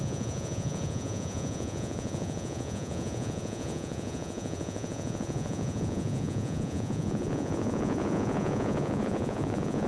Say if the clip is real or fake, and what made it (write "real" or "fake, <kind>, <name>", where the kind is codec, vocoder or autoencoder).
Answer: fake, vocoder, Vocos